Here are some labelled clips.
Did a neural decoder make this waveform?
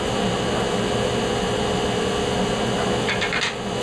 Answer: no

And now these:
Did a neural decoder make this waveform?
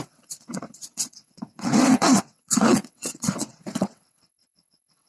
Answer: yes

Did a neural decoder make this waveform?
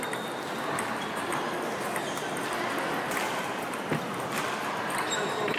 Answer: no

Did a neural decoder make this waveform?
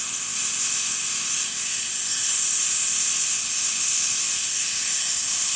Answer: yes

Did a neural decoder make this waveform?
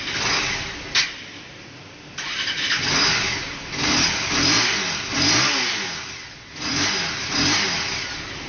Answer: no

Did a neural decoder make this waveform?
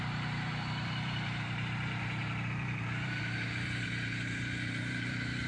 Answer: yes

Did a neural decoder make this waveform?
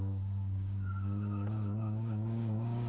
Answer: yes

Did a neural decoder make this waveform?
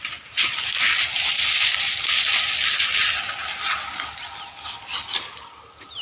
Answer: no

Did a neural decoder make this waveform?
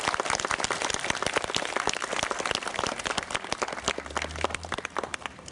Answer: no